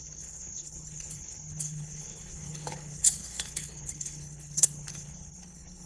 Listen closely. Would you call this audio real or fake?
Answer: fake